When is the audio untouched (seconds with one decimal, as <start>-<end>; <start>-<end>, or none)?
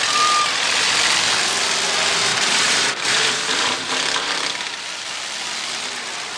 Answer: 0.0-2.3; 4.5-6.4